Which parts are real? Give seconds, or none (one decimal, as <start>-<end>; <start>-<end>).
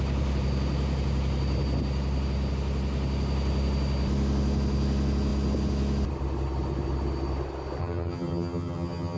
0.0-7.8